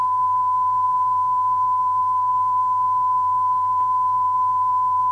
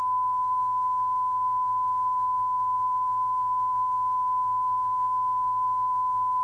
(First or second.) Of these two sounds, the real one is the first